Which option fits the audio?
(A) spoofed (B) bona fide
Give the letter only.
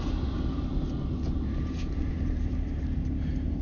A